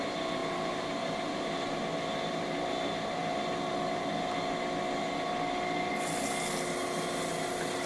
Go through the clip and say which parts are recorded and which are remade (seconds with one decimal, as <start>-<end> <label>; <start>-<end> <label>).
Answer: 0.0-0.4 recorded; 0.4-1.8 remade; 1.8-7.9 recorded